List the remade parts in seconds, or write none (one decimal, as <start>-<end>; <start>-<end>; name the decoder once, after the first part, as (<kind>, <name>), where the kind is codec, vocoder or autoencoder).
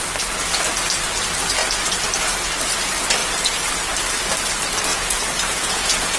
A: 4.9-6.2 (vocoder, Vocos)